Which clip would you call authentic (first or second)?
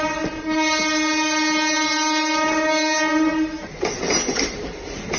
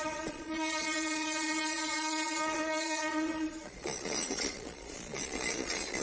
first